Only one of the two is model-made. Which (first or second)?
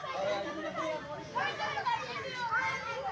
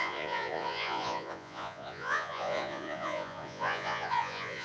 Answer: second